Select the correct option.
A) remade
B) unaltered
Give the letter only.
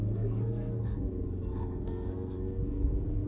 A